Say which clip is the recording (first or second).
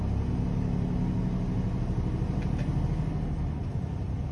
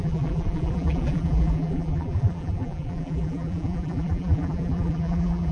first